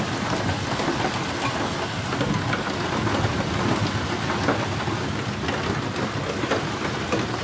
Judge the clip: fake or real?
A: real